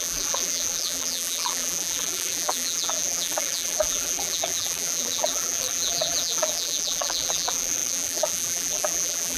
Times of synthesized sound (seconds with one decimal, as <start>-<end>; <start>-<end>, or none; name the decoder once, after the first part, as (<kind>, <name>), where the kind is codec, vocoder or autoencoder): 0.0-9.4 (vocoder, BigVGAN v2)